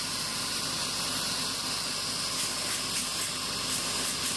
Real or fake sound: real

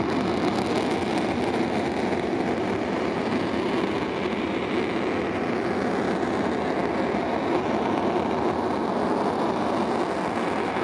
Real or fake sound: real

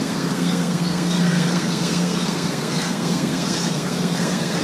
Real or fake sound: fake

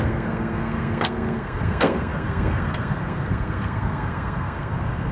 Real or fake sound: fake